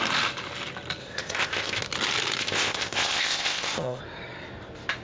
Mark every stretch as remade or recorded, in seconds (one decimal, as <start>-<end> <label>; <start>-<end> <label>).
0.0-1.0 recorded; 1.0-1.8 remade; 1.8-2.4 recorded; 2.4-4.0 remade; 4.0-5.0 recorded